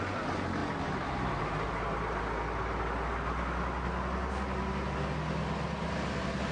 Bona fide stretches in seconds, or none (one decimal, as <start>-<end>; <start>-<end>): 0.0-6.5